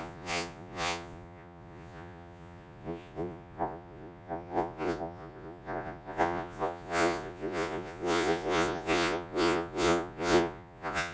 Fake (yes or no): yes